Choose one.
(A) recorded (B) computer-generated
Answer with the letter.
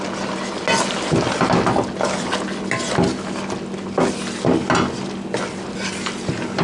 A